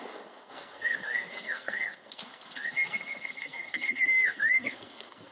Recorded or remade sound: remade